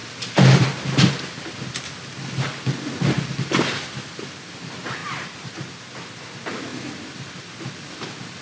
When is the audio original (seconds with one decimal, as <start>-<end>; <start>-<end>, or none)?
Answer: 0.0-5.0; 5.7-8.4